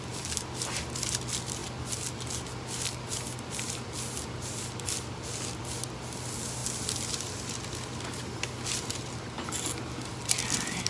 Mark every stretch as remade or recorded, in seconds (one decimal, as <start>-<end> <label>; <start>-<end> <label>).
0.0-10.9 recorded